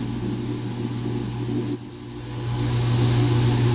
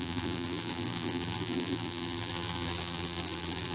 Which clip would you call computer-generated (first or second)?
second